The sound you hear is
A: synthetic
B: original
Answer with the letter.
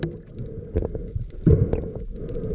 B